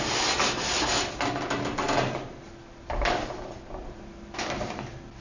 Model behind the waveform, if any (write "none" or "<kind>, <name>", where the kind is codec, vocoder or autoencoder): none